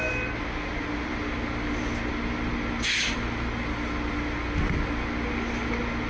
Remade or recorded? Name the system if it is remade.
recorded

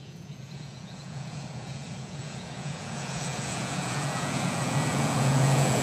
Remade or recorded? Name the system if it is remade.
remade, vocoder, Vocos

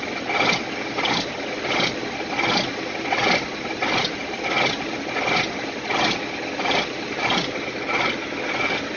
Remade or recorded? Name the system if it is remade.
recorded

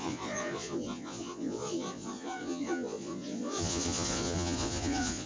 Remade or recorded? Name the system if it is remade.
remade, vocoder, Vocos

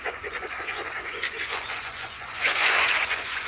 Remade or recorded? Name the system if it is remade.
remade, vocoder, Vocos